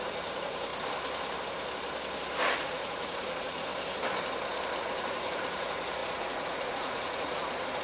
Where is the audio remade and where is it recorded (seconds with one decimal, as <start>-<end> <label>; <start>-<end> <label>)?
0.0-0.7 remade; 0.7-2.6 recorded; 2.6-3.7 remade; 3.7-4.8 recorded; 4.8-7.8 remade